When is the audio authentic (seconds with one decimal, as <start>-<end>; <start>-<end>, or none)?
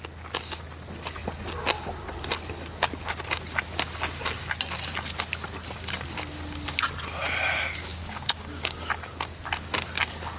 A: 0.0-7.9; 8.9-10.4